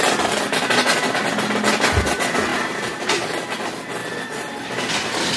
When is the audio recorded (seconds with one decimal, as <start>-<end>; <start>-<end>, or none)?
0.0-5.4